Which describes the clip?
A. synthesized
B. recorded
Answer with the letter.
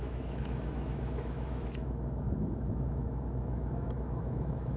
A